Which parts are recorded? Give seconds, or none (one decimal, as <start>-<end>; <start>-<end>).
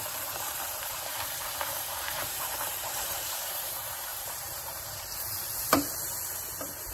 none